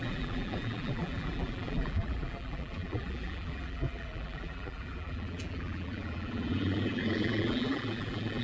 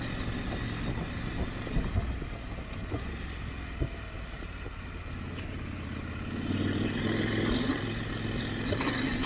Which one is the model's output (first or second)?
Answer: first